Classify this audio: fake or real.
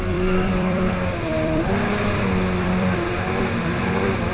fake